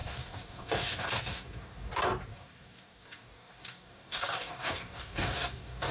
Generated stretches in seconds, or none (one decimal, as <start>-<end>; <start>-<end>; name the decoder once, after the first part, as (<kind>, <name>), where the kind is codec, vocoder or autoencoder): 0.0-1.9 (codec, DAC); 2.3-5.9